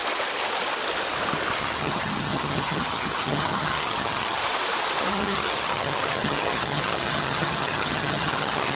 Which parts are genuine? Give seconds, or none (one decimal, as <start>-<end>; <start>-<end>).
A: 0.0-1.6; 4.4-5.1